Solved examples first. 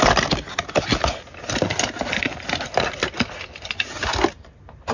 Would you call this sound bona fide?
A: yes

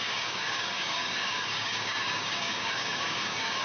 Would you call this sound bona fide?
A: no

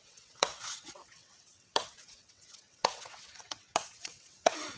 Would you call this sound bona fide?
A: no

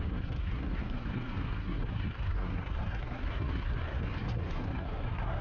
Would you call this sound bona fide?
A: no